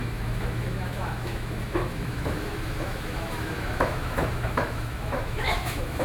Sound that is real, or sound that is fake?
fake